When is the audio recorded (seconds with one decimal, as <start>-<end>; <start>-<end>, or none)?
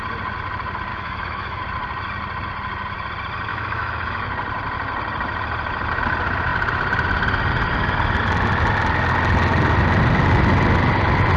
0.0-0.9; 1.6-3.5; 4.3-11.4